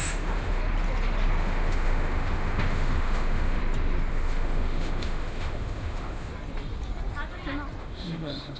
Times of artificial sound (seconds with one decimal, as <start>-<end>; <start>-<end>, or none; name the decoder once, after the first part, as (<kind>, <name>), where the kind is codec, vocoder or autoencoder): 0.0-0.6 (autoencoder, DAC-VAE); 1.4-3.6; 4.1-6.3; 7.8-8.6